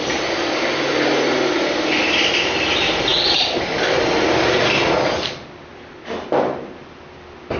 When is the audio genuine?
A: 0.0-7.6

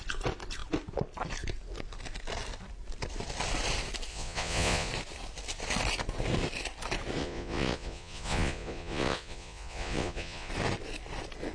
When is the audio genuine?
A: 0.0-4.1; 4.9-7.2; 10.5-11.5

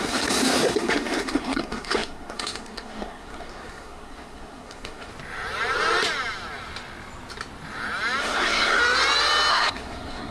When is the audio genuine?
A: 5.1-8.2; 8.8-9.5

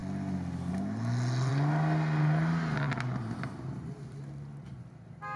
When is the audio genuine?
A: 0.0-5.4

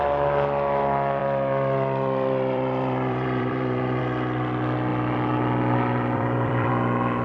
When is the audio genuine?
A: 0.0-1.2; 4.0-4.9; 6.7-7.2

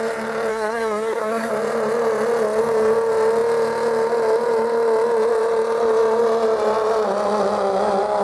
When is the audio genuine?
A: 0.0-0.5; 1.5-8.2